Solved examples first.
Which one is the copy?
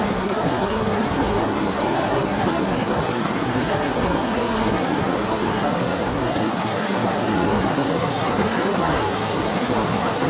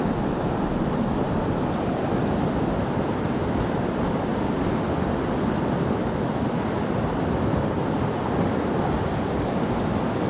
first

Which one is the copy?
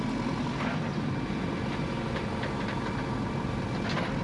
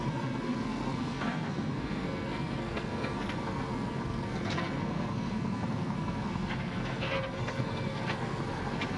second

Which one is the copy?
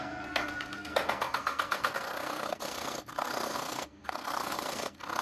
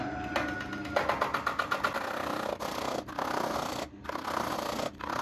first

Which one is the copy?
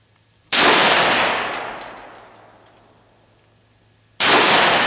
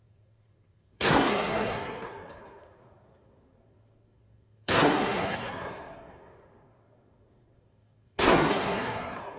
second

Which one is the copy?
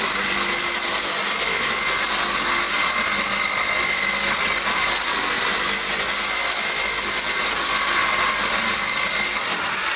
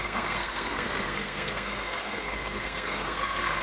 second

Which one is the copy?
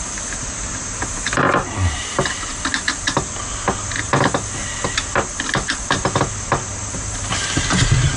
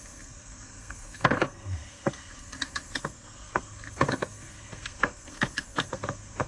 second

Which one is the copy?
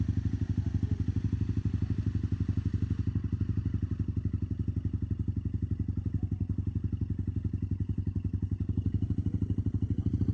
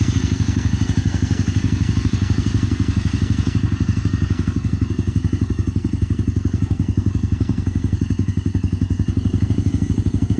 second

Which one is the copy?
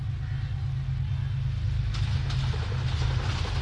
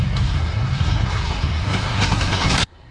second